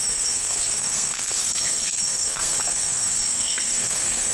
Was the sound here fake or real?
fake